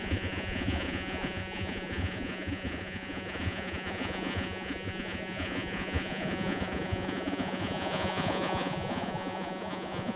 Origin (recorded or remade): remade